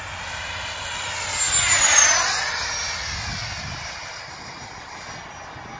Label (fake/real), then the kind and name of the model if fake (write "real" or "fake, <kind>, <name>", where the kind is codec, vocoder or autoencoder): real